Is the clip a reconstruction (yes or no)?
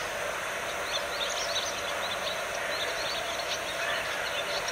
no